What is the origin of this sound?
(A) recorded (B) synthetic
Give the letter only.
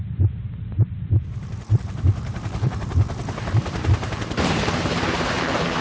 B